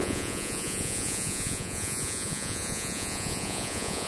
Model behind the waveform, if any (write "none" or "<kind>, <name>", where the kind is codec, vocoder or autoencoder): vocoder, Vocos